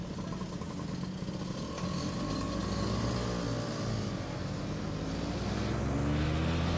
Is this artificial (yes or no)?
no